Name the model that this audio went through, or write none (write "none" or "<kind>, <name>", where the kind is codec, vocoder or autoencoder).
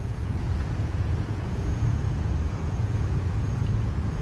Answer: vocoder, Vocos